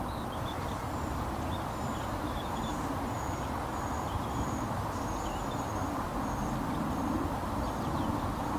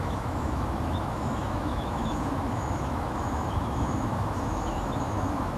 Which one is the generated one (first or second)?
second